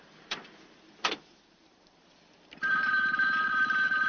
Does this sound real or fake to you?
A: fake